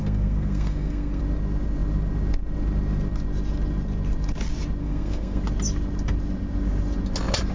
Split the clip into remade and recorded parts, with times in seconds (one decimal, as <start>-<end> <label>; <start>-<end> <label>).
0.0-1.2 remade; 1.2-4.8 recorded; 4.8-5.4 remade; 5.4-7.5 recorded